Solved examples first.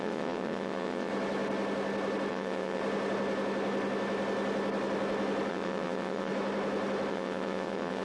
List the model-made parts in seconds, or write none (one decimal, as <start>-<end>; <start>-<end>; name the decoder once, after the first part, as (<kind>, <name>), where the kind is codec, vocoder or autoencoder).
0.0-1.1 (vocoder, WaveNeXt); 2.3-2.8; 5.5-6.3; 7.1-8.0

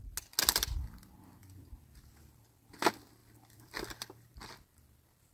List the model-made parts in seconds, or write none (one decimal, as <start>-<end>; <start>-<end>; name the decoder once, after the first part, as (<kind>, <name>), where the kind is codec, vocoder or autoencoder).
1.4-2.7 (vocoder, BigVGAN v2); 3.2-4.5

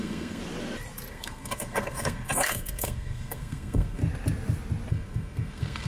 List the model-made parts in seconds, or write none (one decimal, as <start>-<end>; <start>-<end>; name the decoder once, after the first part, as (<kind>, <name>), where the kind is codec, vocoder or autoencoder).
0.0-0.4 (codec, SNAC); 1.1-4.0; 4.9-5.9

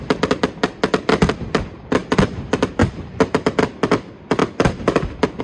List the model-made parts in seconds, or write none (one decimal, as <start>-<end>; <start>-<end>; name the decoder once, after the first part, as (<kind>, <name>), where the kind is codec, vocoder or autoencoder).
none

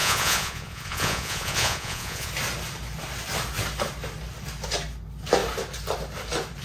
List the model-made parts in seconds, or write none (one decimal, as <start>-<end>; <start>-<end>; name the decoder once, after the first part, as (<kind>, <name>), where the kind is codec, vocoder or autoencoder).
0.0-2.3 (vocoder, Vocos)

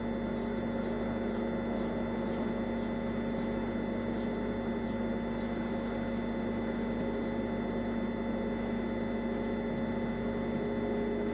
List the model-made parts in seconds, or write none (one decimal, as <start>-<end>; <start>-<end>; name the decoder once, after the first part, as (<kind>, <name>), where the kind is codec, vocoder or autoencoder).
none

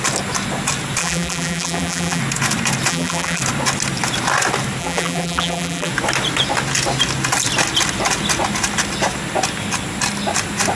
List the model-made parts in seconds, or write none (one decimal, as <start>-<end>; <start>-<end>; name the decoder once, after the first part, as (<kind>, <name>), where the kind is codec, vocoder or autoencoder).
1.0-2.2 (vocoder, BigVGAN v2); 2.9-3.4; 4.8-5.9

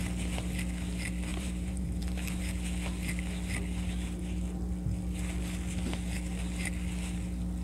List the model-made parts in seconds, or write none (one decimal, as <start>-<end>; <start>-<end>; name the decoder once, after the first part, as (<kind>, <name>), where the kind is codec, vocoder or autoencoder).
1.3-2.4 (vocoder, BigVGAN v2)